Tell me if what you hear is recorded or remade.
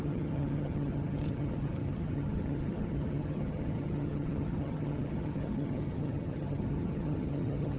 remade